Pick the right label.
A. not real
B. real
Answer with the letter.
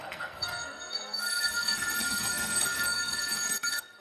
A